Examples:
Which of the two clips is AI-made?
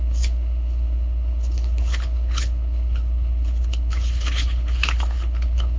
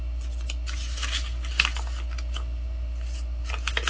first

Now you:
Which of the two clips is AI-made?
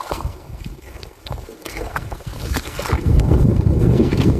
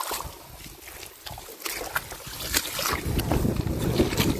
first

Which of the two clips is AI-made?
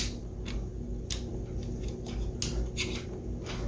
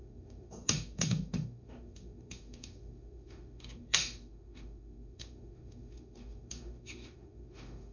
second